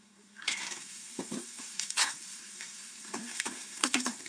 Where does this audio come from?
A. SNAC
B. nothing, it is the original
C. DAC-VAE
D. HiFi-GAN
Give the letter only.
A